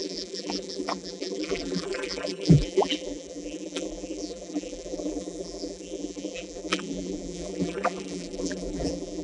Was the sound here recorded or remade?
remade